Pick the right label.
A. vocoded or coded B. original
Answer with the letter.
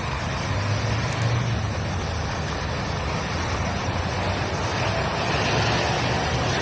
B